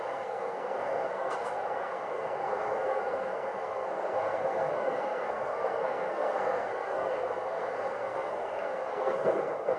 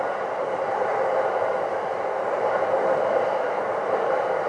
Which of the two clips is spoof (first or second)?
first